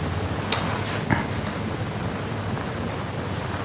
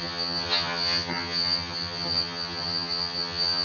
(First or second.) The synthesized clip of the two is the second